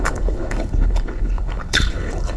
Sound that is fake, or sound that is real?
fake